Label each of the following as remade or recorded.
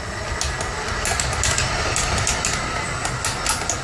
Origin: recorded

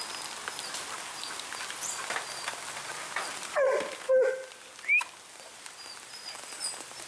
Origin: recorded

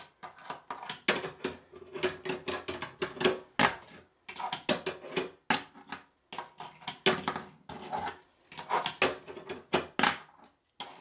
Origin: recorded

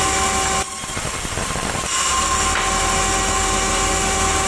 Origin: recorded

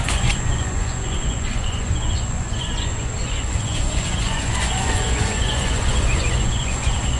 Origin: remade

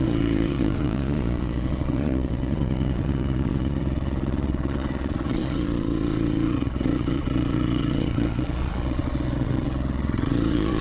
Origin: remade